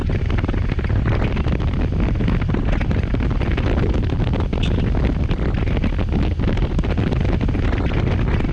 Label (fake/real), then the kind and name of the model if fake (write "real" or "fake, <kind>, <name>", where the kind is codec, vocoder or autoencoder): real